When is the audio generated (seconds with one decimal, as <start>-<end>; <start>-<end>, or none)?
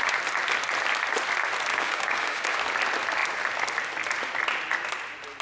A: 1.7-2.6